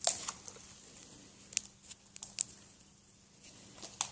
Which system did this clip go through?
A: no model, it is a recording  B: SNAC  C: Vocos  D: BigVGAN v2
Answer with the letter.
A